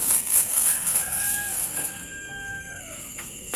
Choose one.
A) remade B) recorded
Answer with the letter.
A